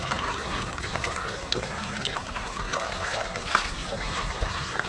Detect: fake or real fake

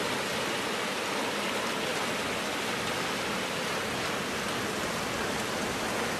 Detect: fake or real real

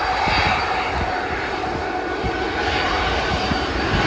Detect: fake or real real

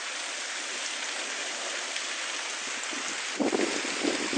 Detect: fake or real fake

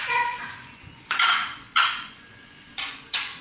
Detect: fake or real fake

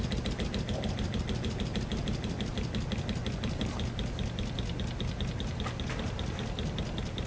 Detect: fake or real real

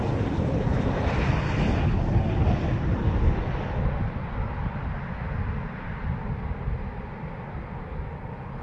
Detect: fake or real real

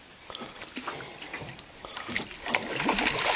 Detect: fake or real real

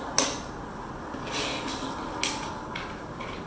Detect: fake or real real